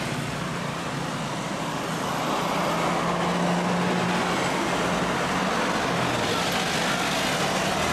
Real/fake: real